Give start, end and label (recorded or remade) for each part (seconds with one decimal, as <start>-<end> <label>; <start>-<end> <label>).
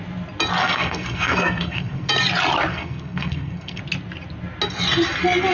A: 0.0-0.6 recorded; 0.6-2.1 remade; 2.1-2.7 recorded; 2.7-3.8 remade; 3.8-5.5 recorded